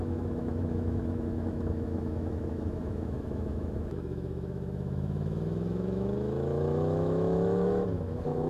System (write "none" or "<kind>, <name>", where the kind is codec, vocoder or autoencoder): autoencoder, DAC-VAE